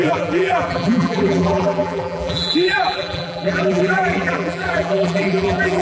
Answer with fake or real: fake